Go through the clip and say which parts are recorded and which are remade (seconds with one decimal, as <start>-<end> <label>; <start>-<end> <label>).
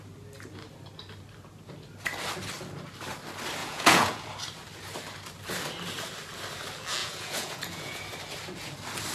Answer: 0.0-3.6 recorded; 3.6-4.3 remade; 4.3-7.0 recorded; 7.0-8.0 remade; 8.0-9.1 recorded